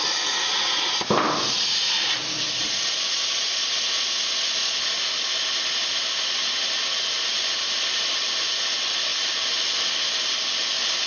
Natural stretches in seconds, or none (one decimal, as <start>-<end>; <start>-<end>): 0.0-11.1